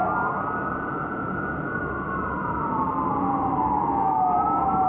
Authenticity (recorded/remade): recorded